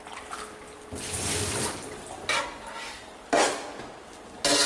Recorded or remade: recorded